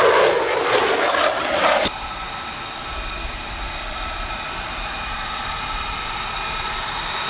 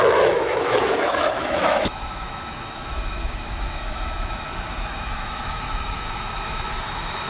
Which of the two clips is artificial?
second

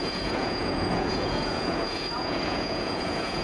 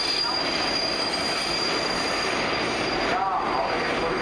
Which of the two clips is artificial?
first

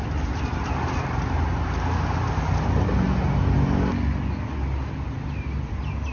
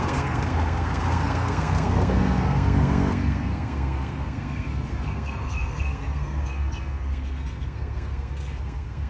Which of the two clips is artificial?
second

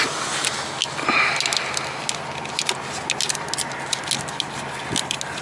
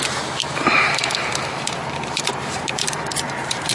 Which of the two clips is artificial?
second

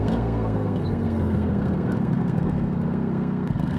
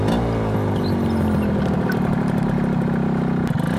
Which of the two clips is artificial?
first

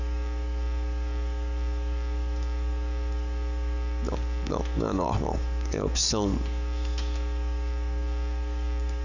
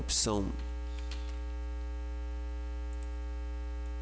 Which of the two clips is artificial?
first